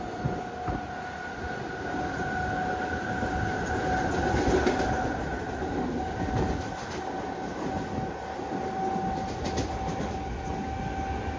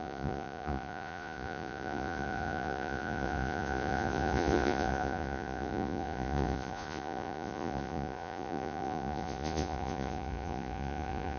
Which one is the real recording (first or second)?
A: first